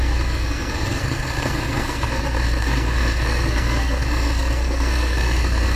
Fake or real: fake